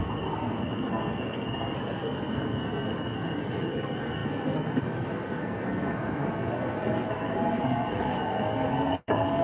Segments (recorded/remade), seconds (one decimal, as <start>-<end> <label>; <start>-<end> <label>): 0.0-9.4 remade